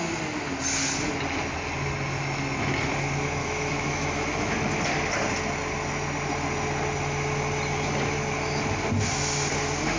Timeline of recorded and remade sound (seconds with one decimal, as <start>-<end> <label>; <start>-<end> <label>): 0.0-3.4 recorded; 3.4-4.5 remade; 4.5-10.0 recorded